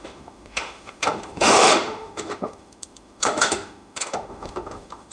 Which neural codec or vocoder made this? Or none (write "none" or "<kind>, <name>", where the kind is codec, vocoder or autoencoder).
autoencoder, DAC-VAE